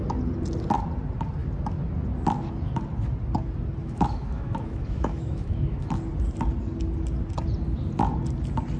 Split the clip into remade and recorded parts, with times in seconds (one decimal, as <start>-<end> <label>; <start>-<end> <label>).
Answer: 0.0-3.8 recorded; 3.8-5.9 remade; 5.9-8.8 recorded